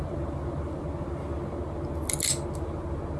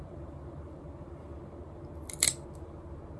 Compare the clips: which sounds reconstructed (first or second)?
second